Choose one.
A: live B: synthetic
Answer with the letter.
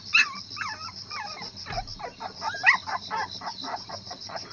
B